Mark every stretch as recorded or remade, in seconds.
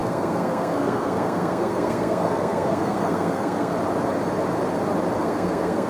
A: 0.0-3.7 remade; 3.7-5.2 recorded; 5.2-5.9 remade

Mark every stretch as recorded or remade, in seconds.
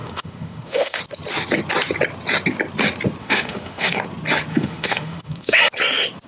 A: 0.0-1.0 remade; 1.0-3.2 recorded; 3.2-4.0 remade; 4.0-4.5 recorded; 4.5-5.6 remade; 5.6-6.3 recorded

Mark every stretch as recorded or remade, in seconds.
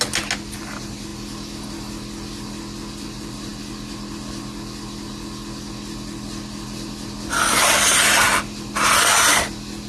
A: 0.0-9.9 recorded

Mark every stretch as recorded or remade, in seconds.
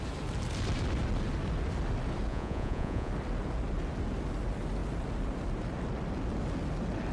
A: 0.0-2.3 recorded; 2.3-3.1 remade; 3.1-7.1 recorded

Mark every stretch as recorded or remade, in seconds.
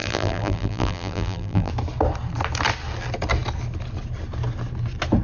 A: 0.0-1.7 remade; 1.7-5.2 recorded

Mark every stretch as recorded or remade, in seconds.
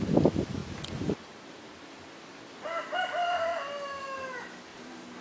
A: 0.0-0.6 recorded; 0.6-1.8 remade; 1.8-2.3 recorded; 2.3-2.8 remade; 2.8-4.7 recorded; 4.7-5.2 remade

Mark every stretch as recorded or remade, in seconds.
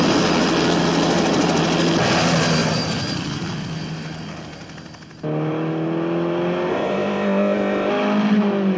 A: 0.0-6.7 recorded; 6.7-7.9 remade; 7.9-8.8 recorded